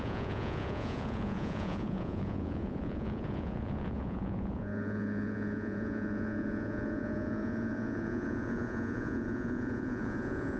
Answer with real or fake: fake